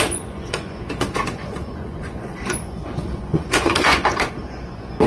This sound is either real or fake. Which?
fake